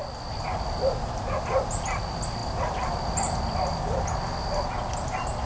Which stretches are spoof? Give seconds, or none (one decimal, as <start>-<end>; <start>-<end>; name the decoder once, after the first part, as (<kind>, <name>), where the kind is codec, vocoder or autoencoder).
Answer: none